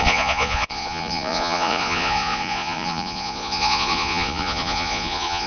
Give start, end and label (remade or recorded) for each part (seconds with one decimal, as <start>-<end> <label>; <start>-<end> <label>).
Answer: 0.0-5.5 remade